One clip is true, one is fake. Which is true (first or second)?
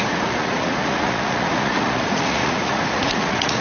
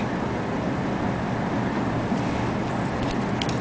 second